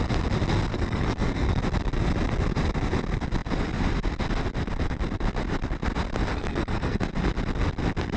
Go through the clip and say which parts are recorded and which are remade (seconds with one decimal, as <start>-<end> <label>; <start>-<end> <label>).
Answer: 0.0-0.7 recorded; 0.7-1.6 remade; 1.6-6.3 recorded; 6.3-7.0 remade; 7.0-8.2 recorded